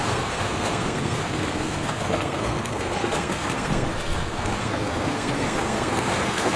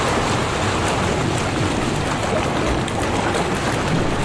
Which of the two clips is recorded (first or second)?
second